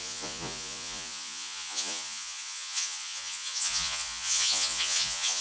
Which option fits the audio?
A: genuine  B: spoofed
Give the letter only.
B